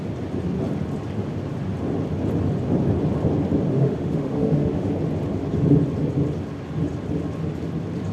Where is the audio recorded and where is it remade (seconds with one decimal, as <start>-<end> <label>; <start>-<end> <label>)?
0.0-3.7 recorded; 3.7-4.9 remade; 4.9-8.1 recorded